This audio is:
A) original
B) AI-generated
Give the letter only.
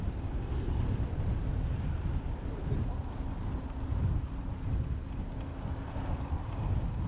A